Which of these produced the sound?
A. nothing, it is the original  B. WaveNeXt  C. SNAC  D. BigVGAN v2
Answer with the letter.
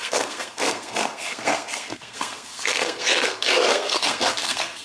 C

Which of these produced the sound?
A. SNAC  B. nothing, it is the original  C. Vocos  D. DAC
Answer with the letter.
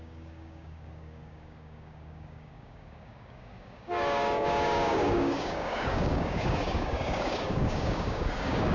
D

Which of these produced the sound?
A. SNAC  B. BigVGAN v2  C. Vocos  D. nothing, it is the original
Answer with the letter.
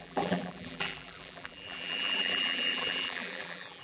B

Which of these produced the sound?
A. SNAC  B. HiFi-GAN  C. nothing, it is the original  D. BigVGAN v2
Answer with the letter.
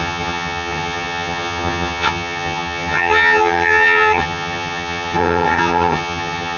B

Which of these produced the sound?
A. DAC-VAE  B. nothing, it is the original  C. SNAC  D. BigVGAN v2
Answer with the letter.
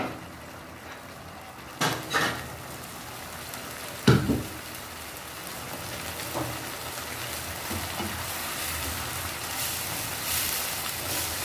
B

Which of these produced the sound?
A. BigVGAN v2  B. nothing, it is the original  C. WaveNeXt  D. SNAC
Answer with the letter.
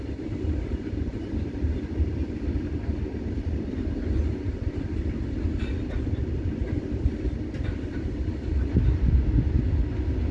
B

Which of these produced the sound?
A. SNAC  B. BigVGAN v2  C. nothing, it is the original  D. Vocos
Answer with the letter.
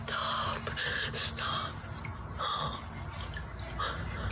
C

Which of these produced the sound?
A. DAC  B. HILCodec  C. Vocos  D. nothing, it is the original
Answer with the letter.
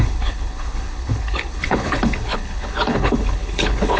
B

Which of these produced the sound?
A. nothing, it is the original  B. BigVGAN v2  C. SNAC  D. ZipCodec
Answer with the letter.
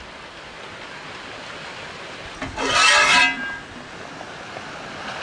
A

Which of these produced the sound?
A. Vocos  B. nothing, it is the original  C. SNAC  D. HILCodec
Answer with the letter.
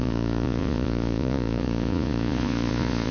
A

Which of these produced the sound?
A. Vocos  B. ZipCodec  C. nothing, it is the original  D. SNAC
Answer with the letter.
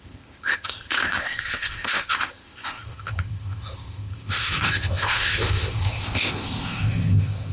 B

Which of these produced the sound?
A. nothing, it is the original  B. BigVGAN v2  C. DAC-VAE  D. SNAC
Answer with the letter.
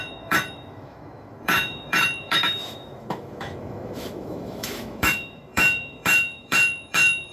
C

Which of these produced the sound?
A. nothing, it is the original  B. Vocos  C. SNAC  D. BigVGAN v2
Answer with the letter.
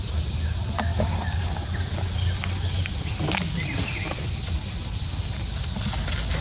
A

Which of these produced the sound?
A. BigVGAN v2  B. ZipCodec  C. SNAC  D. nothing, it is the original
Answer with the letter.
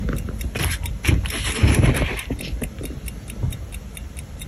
A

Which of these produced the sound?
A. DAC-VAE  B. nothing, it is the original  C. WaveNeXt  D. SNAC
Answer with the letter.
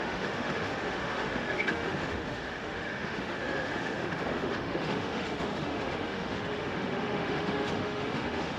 A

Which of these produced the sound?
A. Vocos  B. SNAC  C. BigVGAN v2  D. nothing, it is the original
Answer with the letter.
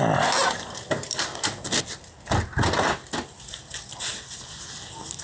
D